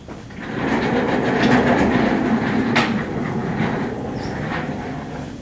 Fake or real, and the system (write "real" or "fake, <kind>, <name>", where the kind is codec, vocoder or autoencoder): real